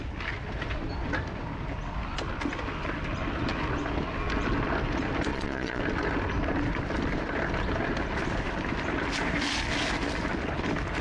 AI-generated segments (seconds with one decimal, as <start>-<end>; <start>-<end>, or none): 5.3-5.8